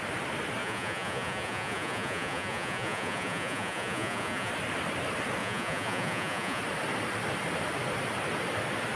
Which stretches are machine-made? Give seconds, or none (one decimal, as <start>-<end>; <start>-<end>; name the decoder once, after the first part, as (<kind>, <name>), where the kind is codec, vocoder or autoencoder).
0.6-4.5 (vocoder, Vocos); 5.4-6.6